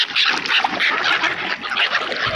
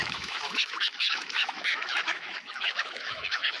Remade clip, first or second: second